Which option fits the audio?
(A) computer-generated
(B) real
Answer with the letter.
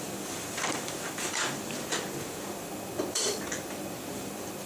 A